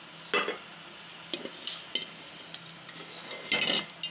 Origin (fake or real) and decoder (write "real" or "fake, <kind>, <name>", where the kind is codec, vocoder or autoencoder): real